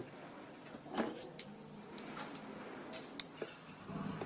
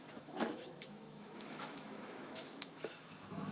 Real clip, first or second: first